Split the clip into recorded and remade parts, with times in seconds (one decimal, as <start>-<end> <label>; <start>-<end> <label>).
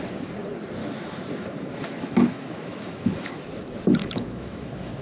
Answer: 0.0-0.8 recorded; 0.8-3.5 remade; 3.5-4.0 recorded; 4.0-5.0 remade